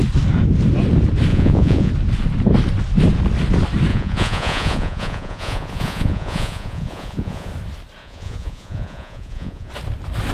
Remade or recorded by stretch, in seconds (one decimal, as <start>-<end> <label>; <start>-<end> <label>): 0.0-1.3 recorded; 1.3-1.9 remade; 1.9-3.9 recorded; 3.9-7.5 remade; 7.5-8.0 recorded; 8.0-9.7 remade; 9.7-10.3 recorded